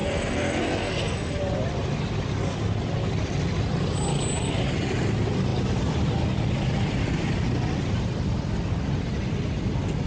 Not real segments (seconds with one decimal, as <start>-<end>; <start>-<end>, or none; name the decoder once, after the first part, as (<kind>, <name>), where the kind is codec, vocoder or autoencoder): 0.0-1.4 (codec, SNAC)